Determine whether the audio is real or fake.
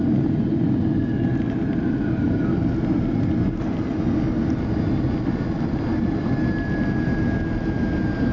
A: real